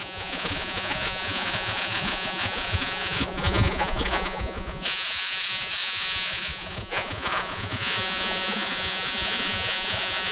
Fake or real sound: fake